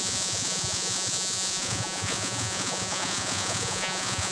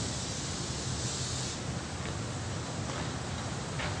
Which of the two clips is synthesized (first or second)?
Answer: first